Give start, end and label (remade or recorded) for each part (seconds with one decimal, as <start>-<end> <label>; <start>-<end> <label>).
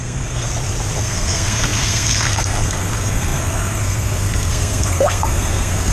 0.0-0.5 remade; 0.5-1.0 recorded; 1.0-5.9 remade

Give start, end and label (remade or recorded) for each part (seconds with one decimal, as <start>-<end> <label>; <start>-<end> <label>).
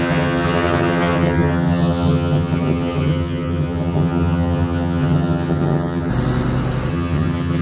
0.0-6.1 remade; 6.1-6.9 recorded; 6.9-7.6 remade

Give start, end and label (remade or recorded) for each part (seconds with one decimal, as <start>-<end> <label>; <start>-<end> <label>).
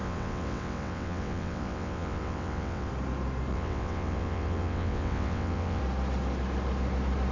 0.0-2.9 remade; 2.9-3.5 recorded; 3.5-5.8 remade; 5.8-7.3 recorded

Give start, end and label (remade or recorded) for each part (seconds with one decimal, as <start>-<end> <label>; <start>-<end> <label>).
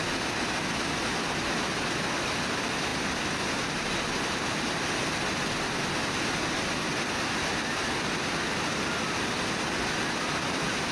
0.0-10.9 recorded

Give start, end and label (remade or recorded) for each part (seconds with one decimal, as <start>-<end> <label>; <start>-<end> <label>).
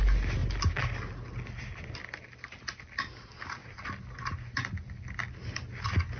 0.0-6.2 recorded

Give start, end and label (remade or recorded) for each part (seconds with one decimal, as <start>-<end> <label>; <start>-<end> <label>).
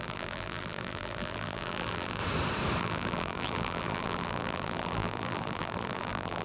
0.0-2.2 remade; 2.2-2.8 recorded; 2.8-6.4 remade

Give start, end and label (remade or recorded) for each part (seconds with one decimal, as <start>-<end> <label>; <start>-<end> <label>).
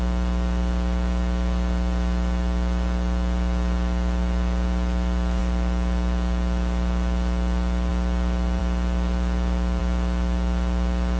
0.0-11.2 recorded